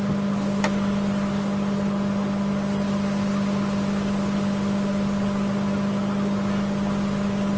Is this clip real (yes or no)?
yes